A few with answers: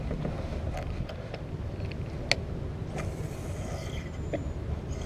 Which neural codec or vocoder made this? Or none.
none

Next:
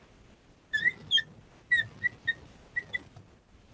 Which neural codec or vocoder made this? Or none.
none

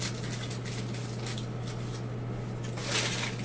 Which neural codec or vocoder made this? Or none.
none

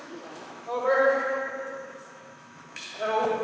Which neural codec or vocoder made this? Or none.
autoencoder, DAC-VAE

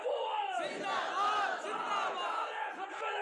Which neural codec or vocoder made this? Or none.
none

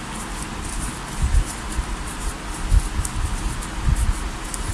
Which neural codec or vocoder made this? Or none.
none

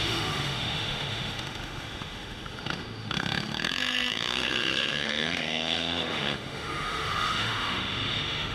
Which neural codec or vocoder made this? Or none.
autoencoder, DAC-VAE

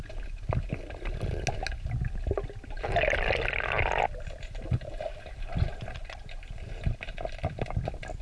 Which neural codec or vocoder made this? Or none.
none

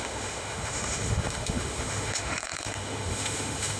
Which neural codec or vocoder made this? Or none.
autoencoder, DAC-VAE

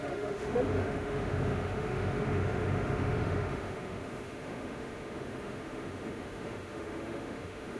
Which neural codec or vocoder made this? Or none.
autoencoder, DAC-VAE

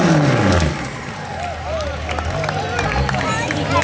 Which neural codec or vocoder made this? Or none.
none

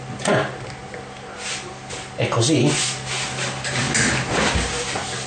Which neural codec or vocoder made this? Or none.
none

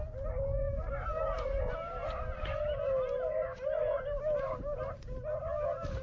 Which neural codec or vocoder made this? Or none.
none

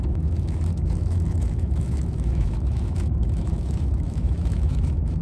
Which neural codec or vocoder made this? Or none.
autoencoder, DAC-VAE